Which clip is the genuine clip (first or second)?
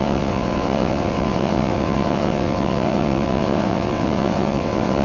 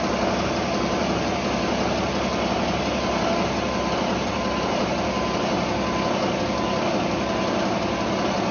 second